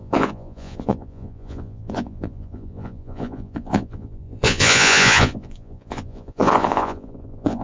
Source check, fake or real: fake